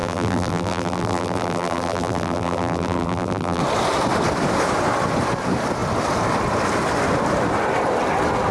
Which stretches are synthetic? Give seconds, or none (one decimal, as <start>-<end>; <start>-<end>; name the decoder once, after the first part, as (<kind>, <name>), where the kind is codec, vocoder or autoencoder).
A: 0.0-3.6 (vocoder, BigVGAN v2)